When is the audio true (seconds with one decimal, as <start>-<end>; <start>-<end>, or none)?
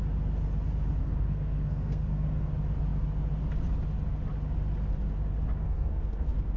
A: 0.0-1.0; 2.5-5.6